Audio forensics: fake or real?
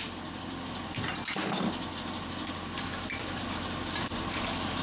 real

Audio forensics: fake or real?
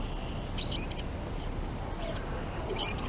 real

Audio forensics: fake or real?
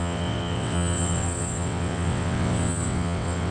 fake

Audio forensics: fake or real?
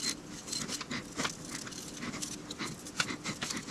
real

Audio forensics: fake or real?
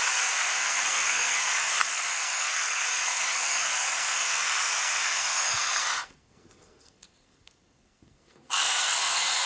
fake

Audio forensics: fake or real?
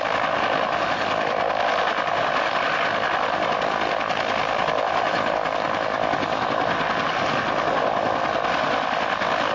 real